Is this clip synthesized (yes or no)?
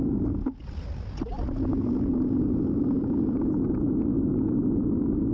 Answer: yes